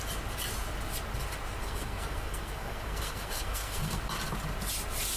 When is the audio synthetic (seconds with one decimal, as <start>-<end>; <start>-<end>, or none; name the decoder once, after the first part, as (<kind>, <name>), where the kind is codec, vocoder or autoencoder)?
1.6-4.0 (codec, SNAC)